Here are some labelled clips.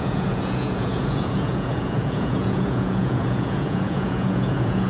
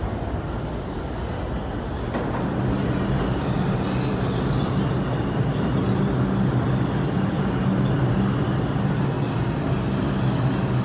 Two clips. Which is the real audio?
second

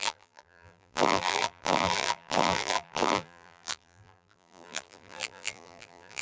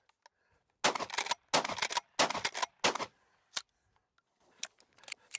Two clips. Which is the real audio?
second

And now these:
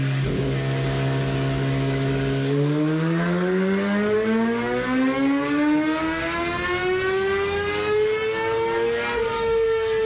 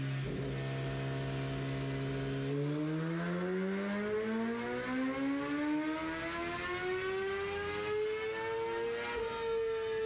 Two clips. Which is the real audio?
second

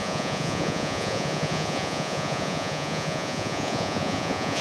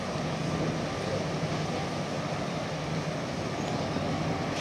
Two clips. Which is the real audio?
second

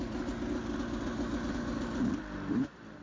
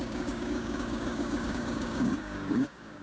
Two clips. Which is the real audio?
first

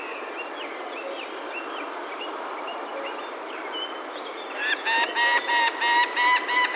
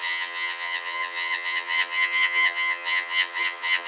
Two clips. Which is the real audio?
first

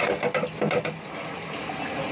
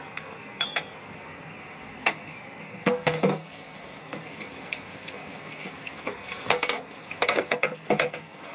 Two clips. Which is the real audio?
first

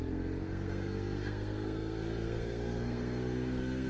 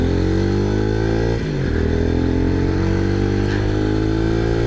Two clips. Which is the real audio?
second